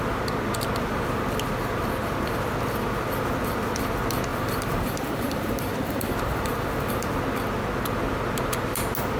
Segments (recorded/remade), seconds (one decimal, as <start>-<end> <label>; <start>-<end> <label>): 0.0-4.3 recorded; 4.3-7.2 remade; 7.2-9.2 recorded

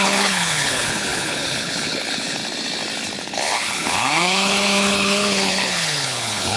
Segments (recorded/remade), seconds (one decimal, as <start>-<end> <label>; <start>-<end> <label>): 0.0-2.4 remade; 2.4-3.2 recorded; 3.2-6.6 remade

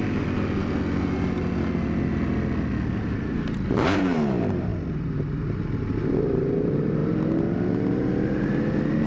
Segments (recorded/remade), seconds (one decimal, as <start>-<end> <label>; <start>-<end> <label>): 0.0-3.0 recorded; 3.0-4.7 remade; 4.7-6.2 recorded; 6.2-7.0 remade; 7.0-7.9 recorded; 7.9-9.1 remade